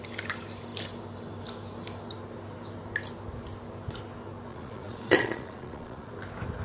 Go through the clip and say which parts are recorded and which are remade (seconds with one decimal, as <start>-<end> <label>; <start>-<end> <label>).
0.0-4.5 recorded; 4.5-6.1 remade; 6.1-6.6 recorded